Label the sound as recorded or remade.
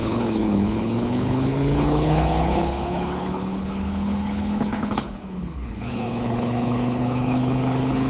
remade